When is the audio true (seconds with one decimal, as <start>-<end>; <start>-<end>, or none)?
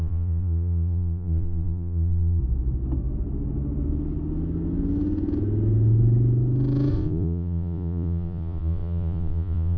2.4-6.9